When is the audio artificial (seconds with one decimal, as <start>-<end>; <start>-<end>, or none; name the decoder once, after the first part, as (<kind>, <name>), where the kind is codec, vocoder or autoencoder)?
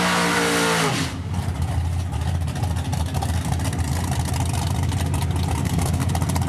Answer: 5.6-6.1 (codec, SNAC)